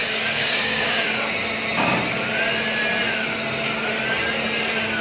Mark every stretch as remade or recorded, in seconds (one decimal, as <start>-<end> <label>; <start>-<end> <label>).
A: 0.0-1.2 remade; 1.2-5.0 recorded